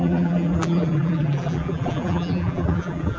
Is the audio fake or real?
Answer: fake